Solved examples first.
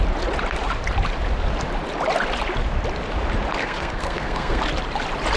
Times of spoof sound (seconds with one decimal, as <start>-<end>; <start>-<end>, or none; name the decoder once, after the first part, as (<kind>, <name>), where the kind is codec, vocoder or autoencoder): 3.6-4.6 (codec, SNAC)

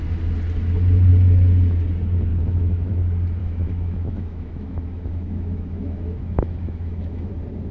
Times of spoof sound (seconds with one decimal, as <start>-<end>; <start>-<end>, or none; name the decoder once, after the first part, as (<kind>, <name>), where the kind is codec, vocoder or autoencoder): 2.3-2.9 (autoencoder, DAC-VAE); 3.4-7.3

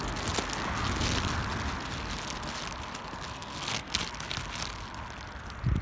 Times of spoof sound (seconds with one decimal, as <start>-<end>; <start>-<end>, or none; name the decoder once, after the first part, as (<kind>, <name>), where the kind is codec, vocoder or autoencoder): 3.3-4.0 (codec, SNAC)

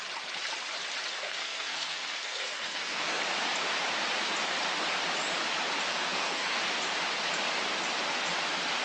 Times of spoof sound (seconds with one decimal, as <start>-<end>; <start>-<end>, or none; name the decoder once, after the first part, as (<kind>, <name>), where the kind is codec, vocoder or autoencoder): 1.1-3.2 (codec, SNAC); 5.9-6.6

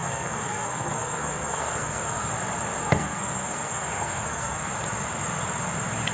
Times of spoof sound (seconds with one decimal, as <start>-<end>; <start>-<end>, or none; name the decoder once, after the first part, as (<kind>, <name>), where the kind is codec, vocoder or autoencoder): 0.0-2.3 (codec, SNAC); 2.8-4.7

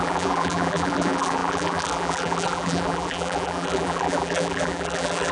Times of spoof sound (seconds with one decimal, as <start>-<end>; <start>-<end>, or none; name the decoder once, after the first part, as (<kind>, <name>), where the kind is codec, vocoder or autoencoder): 0.0-5.3 (vocoder, BigVGAN v2)